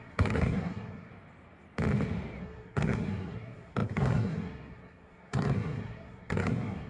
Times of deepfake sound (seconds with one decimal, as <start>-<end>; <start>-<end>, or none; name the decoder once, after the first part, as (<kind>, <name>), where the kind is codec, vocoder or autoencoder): 0.0-1.1 (codec, SNAC); 2.4-6.9